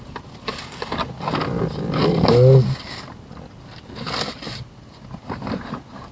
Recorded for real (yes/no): yes